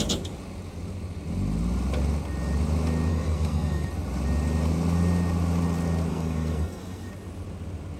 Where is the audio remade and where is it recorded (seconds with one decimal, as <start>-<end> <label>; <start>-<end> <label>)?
0.0-3.1 recorded; 3.1-3.9 remade; 3.9-6.1 recorded; 6.1-7.1 remade; 7.1-8.0 recorded